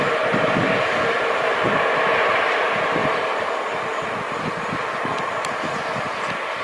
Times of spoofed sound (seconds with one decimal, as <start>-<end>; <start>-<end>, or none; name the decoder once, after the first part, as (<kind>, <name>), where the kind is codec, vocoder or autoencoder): none